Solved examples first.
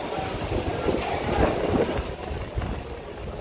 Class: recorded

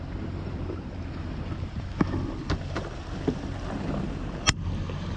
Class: recorded